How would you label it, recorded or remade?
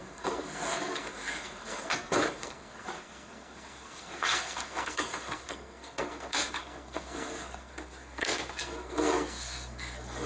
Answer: remade